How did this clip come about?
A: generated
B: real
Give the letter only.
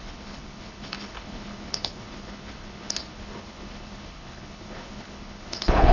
A